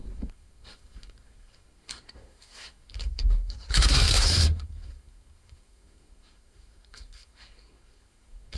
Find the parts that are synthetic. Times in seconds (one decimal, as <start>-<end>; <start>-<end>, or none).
0.0-8.6